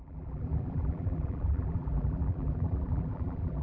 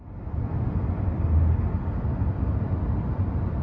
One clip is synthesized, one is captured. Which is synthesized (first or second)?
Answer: first